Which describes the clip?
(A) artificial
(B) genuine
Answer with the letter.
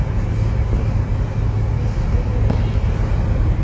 B